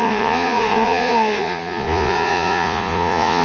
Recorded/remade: remade